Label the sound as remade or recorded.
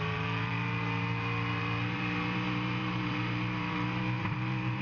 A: remade